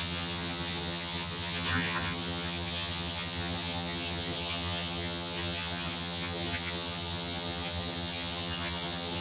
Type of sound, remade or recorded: remade